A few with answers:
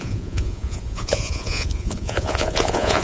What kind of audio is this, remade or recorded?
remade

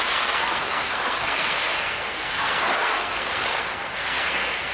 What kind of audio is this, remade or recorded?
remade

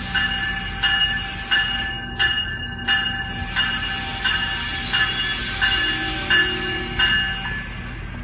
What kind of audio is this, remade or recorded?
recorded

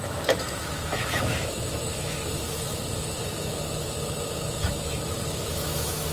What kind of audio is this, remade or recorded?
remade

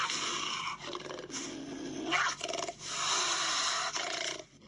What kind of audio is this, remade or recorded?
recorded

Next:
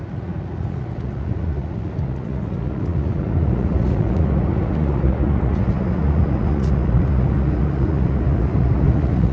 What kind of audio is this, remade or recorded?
remade